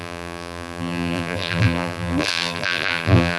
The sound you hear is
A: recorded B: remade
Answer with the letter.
B